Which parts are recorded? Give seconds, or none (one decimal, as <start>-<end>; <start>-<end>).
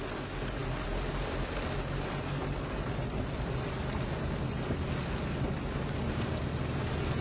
0.0-0.6; 4.9-7.2